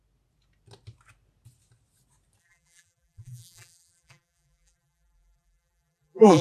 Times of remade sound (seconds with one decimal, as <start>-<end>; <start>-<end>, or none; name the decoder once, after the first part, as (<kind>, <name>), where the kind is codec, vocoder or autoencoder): 2.4-6.4 (vocoder, BigVGAN v2)